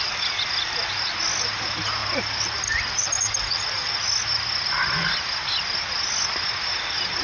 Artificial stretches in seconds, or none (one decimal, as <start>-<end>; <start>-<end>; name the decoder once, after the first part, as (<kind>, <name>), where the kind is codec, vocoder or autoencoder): none